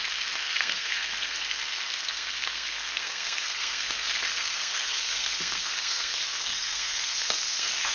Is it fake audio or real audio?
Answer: fake